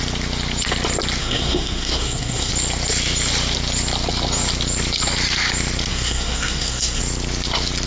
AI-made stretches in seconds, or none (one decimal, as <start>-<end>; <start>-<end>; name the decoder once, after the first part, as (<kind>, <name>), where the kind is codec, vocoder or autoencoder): 1.2-2.5 (codec, SNAC); 5.9-7.0